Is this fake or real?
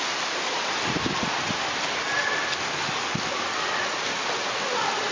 real